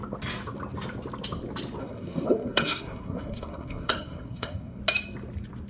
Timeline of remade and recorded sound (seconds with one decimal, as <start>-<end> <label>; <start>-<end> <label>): 0.0-1.8 recorded; 1.8-4.8 remade; 4.8-5.7 recorded